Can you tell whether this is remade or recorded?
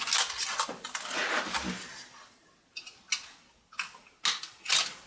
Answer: recorded